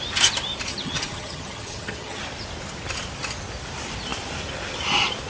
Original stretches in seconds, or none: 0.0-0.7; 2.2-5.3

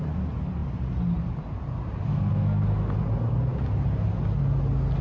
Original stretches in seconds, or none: 0.0-2.1; 2.6-5.0

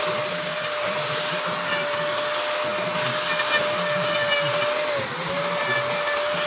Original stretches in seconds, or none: 0.0-0.5; 1.4-6.5

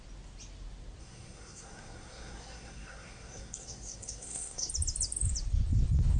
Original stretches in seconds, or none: 0.0-1.0; 4.7-6.2